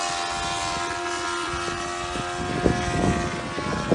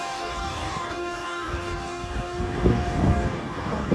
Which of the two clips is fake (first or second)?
second